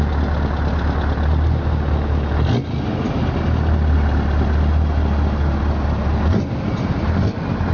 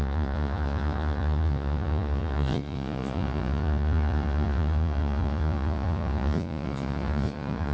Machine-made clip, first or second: second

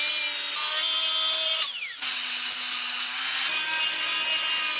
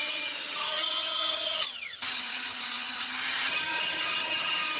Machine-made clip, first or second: second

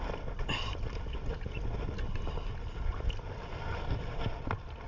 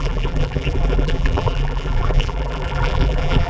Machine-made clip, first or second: second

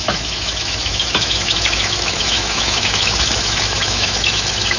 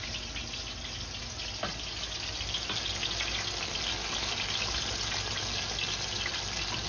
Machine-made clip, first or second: first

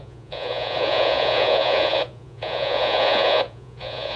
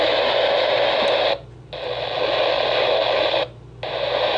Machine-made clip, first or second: first